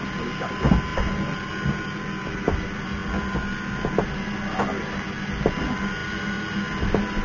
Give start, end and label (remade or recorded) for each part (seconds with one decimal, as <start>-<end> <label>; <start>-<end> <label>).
0.0-7.2 recorded